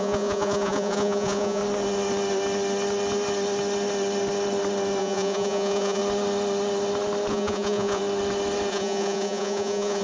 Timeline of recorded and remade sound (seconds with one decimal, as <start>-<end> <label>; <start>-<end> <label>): 0.0-1.6 remade; 1.6-5.0 recorded; 5.0-6.0 remade; 6.0-7.3 recorded; 7.3-8.0 remade; 8.0-8.7 recorded; 8.7-10.0 remade